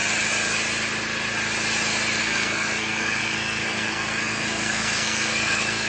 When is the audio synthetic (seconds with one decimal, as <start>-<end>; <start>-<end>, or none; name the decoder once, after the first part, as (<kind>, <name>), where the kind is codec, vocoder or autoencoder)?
2.2-5.9 (codec, SNAC)